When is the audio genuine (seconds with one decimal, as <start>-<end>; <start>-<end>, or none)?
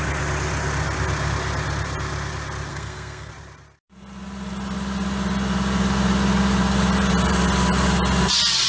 0.0-2.7; 3.3-8.7